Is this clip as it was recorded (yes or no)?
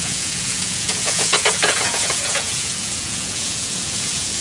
no